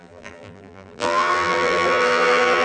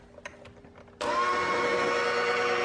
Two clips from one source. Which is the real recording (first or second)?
second